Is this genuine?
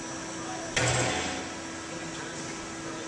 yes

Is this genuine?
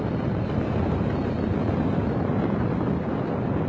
yes